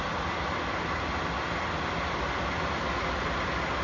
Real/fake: real